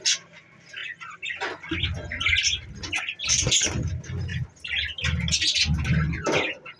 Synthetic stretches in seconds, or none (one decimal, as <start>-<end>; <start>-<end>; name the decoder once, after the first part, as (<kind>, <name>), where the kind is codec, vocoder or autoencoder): none